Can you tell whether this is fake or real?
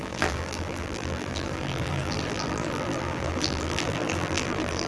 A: fake